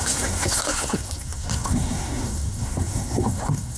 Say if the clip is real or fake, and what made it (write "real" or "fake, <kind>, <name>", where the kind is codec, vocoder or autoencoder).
fake, codec, SNAC